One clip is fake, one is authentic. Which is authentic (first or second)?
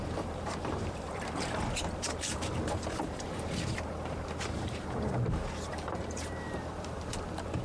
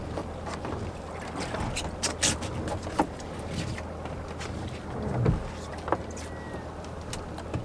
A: second